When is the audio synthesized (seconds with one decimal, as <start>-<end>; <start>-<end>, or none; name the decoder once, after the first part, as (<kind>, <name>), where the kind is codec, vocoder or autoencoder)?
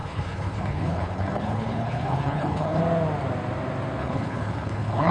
0.0-2.8 (codec, HILCodec); 4.0-5.1